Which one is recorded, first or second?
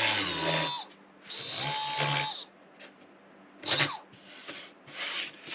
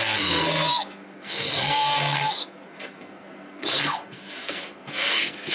first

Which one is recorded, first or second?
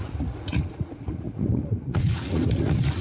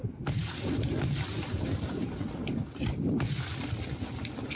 second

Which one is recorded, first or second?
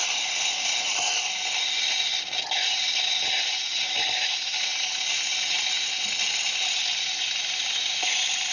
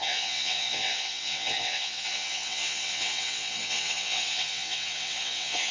first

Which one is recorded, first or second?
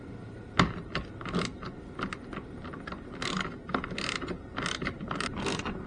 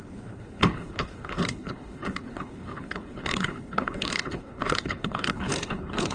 first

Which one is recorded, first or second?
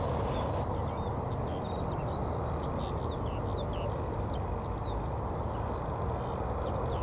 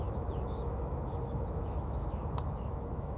first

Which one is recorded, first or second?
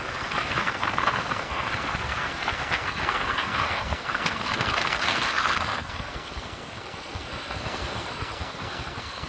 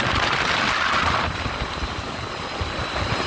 second